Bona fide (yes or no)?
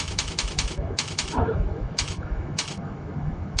no